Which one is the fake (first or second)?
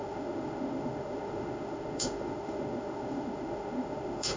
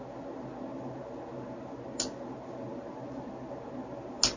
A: first